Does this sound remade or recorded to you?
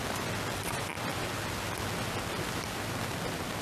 recorded